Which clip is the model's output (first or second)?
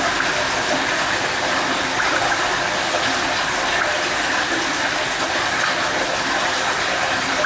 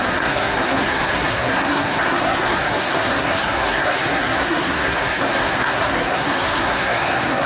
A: second